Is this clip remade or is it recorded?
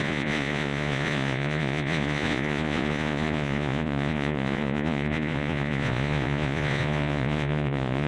remade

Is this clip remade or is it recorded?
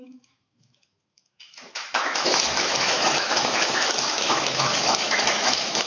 remade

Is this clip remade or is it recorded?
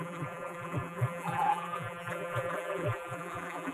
remade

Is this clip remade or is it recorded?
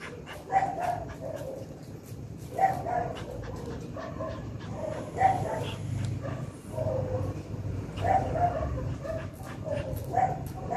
recorded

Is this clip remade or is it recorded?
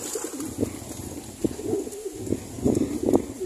recorded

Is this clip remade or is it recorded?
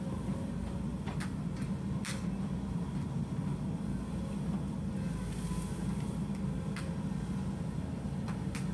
recorded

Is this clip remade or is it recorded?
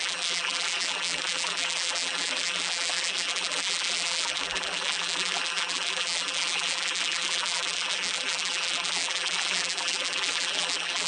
remade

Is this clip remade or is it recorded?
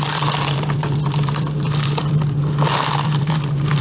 remade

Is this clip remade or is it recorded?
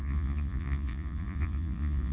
remade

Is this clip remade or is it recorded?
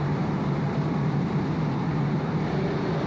recorded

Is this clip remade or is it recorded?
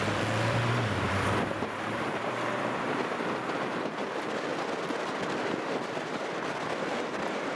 remade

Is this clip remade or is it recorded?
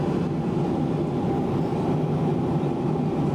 recorded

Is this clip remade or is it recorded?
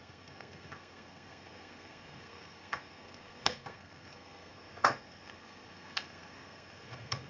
remade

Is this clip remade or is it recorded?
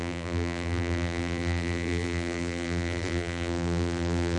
remade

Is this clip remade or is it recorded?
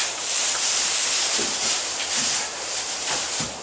remade